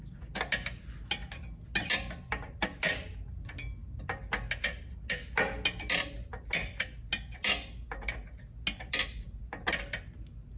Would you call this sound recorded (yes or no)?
yes